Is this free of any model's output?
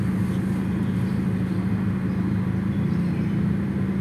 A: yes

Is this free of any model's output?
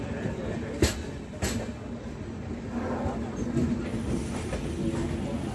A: yes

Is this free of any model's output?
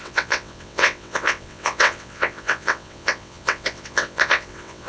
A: no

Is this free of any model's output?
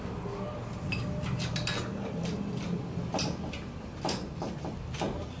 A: yes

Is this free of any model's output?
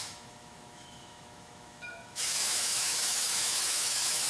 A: no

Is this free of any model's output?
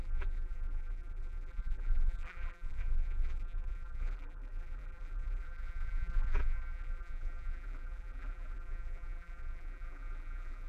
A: no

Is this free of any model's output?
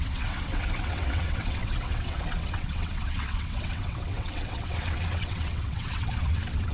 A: no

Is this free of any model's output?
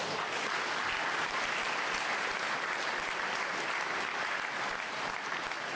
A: yes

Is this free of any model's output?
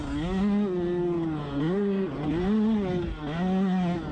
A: yes